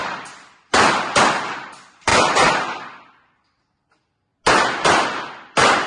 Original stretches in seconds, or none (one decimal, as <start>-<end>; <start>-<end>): 1.2-5.9

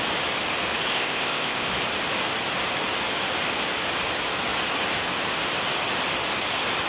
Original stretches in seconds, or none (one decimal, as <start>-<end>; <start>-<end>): 0.0-0.9; 1.7-6.9

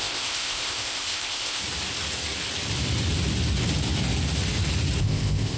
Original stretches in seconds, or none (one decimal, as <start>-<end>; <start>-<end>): 1.6-5.0

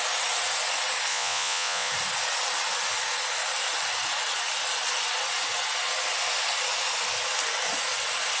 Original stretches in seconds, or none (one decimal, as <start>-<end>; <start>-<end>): 0.0-1.1; 1.9-8.4

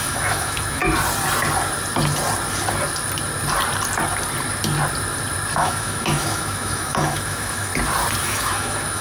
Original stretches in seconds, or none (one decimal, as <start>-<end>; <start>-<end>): 0.8-5.6; 7.7-8.2

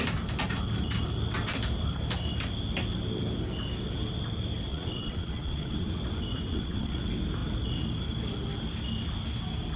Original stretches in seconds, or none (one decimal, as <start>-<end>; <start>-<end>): 0.0-4.7; 5.9-6.5; 7.0-9.8

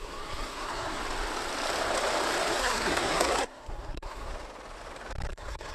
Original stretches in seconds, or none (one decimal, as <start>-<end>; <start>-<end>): 1.0-2.5; 4.3-5.3